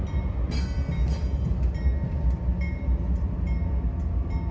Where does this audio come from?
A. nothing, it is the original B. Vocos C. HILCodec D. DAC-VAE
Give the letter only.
A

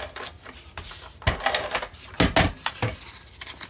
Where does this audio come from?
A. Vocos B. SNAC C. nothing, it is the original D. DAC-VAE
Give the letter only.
C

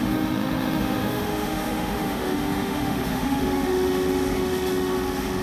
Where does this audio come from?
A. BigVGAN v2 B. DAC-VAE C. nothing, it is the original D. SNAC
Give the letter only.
B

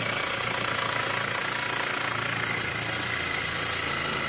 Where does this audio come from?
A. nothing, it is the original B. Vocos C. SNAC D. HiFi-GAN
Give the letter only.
A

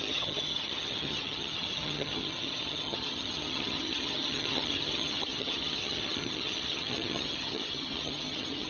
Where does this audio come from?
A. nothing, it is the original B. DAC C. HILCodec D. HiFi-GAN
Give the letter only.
D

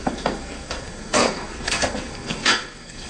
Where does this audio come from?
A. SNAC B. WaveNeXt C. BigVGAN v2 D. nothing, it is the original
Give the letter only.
A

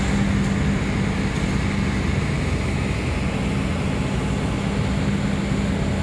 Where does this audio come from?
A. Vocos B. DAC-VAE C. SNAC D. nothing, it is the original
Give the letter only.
D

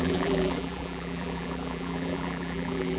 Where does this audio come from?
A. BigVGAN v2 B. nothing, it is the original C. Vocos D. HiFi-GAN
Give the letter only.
A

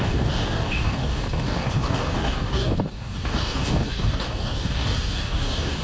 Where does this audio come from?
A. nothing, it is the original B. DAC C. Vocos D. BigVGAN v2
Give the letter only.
B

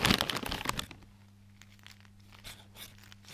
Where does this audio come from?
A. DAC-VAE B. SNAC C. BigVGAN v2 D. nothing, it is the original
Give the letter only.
D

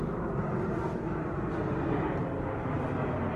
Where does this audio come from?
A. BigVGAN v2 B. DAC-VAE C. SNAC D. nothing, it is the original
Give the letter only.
D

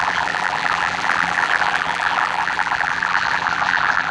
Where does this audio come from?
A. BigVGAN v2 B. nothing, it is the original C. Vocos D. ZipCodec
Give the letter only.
A